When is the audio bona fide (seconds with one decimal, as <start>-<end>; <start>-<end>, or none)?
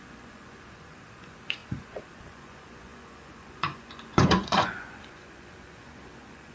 none